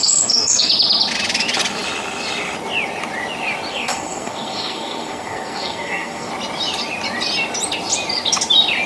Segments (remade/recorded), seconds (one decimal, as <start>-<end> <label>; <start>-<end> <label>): 0.0-0.7 remade; 0.7-3.7 recorded; 3.7-6.3 remade; 6.3-8.9 recorded